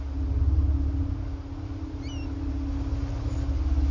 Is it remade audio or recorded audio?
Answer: recorded